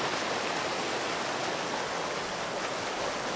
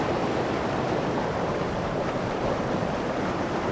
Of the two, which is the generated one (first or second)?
second